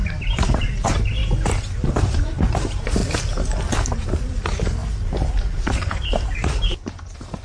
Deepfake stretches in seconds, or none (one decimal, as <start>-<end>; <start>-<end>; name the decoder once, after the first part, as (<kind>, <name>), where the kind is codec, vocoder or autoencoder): 0.0-1.2 (vocoder, BigVGAN v2); 1.9-3.0; 3.7-7.4